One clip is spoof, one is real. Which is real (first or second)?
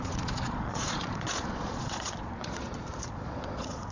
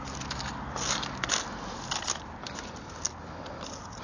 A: second